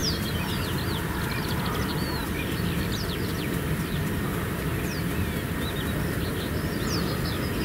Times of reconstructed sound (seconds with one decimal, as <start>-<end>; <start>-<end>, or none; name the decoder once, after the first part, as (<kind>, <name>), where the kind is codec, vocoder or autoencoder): 0.0-1.0 (vocoder, BigVGAN v2); 2.2-3.6